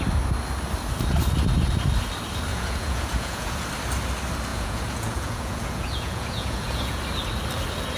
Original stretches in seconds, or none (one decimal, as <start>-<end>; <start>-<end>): 0.0-2.5; 3.7-4.5; 7.0-8.0